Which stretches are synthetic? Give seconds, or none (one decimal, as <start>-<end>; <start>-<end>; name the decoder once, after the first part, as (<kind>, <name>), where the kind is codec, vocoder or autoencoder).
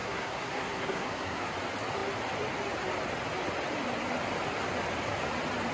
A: 0.0-1.5 (codec, SNAC)